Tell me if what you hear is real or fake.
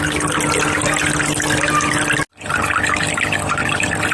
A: real